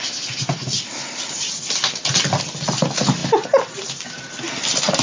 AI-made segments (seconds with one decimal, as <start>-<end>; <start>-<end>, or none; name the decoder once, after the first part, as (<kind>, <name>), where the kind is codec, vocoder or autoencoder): none